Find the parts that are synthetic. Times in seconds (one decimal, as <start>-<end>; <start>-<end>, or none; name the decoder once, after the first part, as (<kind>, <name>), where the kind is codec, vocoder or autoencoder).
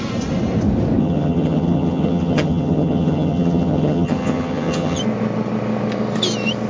1.0-5.0 (vocoder, HiFi-GAN)